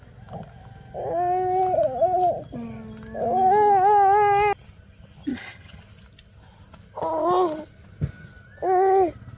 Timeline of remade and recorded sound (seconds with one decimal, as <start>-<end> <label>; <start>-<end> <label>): 0.0-5.3 recorded; 5.3-5.8 remade; 5.8-9.4 recorded